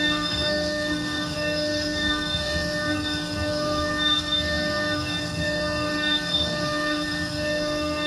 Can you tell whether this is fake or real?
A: fake